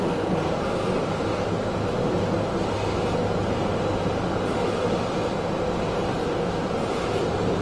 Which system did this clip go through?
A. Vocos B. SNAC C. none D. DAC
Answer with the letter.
C